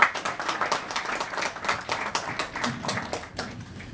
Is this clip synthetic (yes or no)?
no